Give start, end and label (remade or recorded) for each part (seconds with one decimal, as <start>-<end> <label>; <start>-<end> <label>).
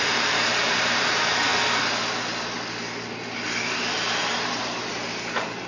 0.0-1.5 remade; 1.5-3.7 recorded; 3.7-5.7 remade